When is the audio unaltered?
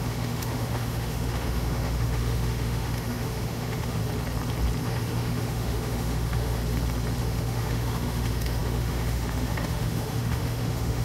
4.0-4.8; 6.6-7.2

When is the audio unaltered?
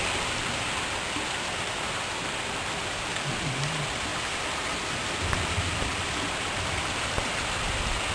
0.0-8.1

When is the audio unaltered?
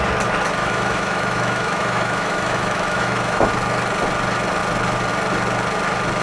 0.0-0.6; 3.5-6.2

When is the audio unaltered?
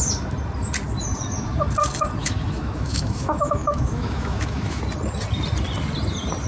0.0-2.2; 4.8-6.5